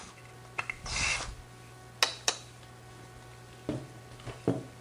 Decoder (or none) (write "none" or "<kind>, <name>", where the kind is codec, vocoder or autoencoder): none